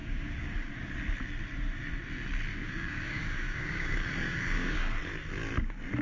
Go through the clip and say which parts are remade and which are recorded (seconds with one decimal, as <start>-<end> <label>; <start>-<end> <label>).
0.0-0.7 remade; 0.7-2.5 recorded; 2.5-5.0 remade; 5.0-6.0 recorded